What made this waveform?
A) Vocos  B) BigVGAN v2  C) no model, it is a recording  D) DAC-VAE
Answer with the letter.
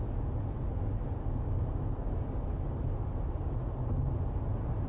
C